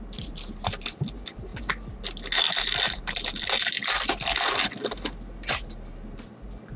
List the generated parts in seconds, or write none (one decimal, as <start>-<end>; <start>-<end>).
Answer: none